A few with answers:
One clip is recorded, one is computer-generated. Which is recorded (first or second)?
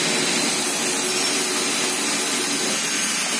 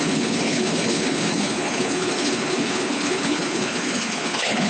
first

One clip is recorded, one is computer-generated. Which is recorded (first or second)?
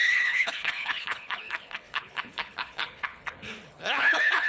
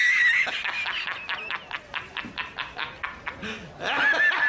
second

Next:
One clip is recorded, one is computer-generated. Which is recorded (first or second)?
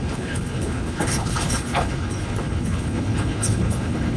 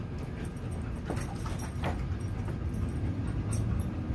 second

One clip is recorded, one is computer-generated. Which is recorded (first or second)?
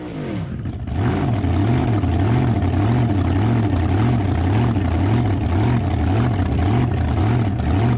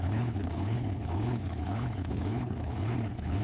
first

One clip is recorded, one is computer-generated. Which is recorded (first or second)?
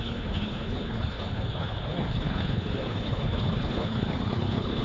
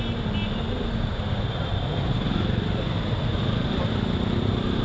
second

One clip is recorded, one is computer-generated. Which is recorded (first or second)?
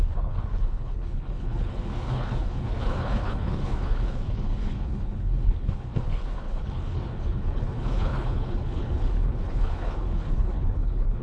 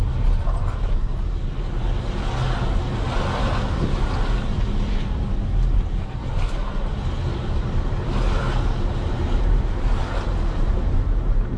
second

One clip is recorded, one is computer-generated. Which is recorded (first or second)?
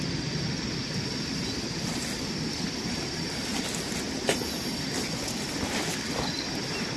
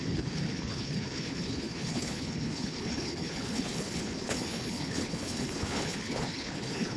first